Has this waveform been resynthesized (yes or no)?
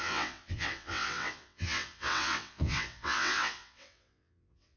yes